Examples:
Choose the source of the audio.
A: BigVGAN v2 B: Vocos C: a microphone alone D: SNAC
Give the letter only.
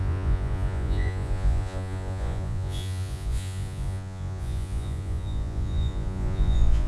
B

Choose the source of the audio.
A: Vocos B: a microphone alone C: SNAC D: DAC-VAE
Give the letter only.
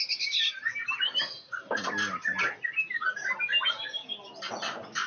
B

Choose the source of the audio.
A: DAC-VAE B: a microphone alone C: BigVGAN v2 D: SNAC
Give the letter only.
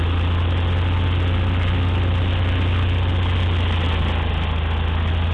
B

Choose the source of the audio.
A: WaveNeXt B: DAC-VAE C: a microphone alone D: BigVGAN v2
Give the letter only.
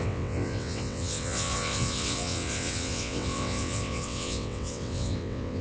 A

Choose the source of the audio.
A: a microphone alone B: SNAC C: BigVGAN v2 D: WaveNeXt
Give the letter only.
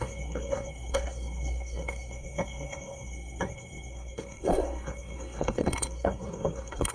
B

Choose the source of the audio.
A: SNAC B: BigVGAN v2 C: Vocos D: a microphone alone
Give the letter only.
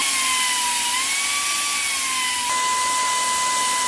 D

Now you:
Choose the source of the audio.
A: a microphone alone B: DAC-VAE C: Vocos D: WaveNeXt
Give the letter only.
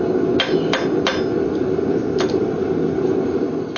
A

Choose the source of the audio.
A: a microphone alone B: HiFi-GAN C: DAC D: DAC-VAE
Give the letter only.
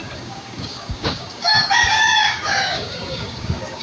C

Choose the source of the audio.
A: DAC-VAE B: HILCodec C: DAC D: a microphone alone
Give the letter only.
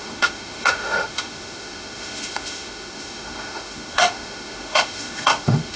A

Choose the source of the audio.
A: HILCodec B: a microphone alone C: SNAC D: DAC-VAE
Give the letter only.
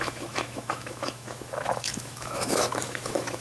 D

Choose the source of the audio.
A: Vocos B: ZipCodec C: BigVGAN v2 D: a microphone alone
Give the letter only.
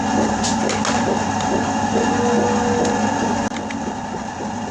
D